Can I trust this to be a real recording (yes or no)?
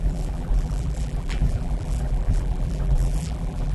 no